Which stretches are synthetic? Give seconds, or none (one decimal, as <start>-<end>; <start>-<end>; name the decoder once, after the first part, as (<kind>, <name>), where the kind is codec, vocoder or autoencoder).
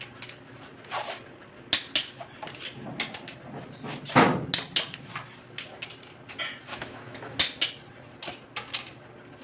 6.7-7.4 (autoencoder, DAC-VAE)